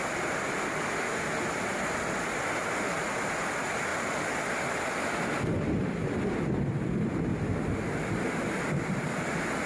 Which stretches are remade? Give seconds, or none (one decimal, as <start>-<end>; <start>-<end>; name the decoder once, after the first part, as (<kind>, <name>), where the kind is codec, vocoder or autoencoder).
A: none